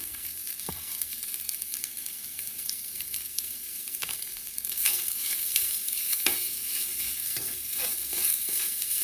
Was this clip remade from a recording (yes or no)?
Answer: yes